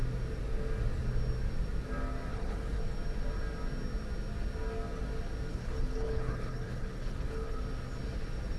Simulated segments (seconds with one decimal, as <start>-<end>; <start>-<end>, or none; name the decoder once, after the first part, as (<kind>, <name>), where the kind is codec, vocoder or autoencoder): 2.3-2.8 (codec, HILCodec); 5.5-7.6